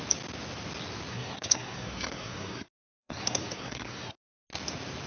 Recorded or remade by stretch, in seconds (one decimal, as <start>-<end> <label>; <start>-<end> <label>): 0.0-1.1 recorded; 1.1-4.2 remade; 4.2-5.1 recorded